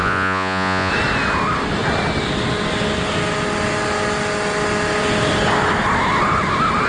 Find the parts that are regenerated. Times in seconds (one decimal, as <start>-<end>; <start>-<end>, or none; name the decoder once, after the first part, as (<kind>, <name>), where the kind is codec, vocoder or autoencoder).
0.0-0.9 (vocoder, Vocos)